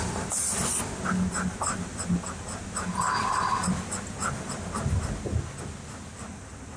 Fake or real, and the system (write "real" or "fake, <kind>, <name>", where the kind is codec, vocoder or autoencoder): real